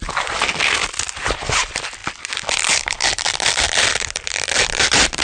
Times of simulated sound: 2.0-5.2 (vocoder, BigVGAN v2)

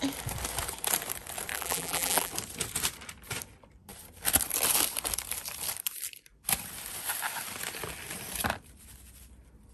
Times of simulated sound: 1.5-2.3 (vocoder, BigVGAN v2)

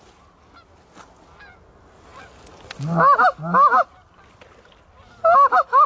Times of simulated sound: none

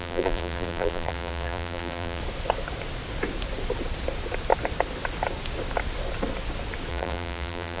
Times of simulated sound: 0.0-2.2 (vocoder, BigVGAN v2); 6.9-7.8

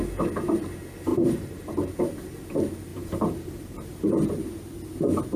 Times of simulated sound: 1.1-1.9 (vocoder, BigVGAN v2); 2.9-4.3

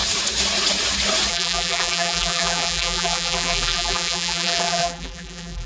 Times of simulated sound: 1.3-5.7 (vocoder, BigVGAN v2)

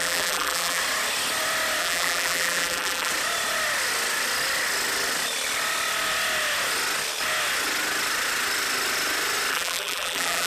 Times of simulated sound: 0.0-0.8 (vocoder, BigVGAN v2); 1.8-3.1; 9.5-10.5